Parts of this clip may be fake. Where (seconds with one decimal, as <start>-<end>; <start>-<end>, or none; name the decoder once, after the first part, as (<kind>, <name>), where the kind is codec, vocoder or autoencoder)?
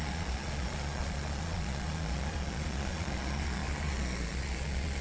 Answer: 0.0-5.0 (vocoder, Vocos)